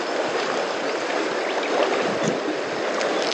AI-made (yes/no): no